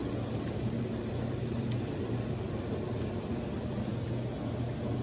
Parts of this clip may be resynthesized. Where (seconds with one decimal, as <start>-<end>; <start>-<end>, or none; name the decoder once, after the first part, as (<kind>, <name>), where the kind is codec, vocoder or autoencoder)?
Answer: 0.0-3.9 (vocoder, BigVGAN v2)